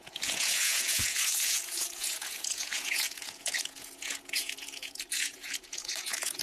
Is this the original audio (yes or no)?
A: no